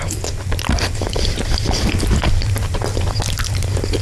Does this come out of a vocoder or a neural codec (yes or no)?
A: no